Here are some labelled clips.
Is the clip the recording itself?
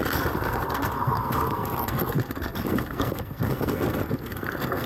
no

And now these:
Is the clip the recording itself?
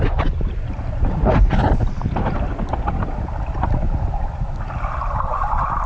yes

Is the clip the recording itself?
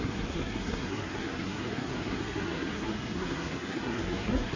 no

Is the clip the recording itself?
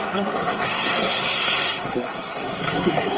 no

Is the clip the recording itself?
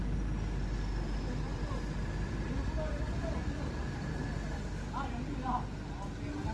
yes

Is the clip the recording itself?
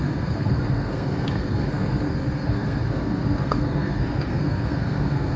no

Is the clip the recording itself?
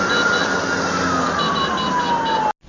yes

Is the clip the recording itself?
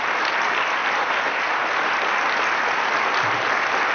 yes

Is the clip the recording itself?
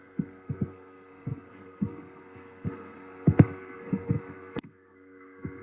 no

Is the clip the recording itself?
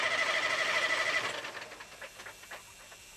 yes